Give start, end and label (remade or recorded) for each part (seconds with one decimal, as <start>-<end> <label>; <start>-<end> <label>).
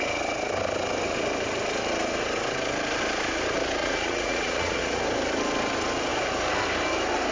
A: 0.0-3.8 recorded; 3.8-5.0 remade; 5.0-7.3 recorded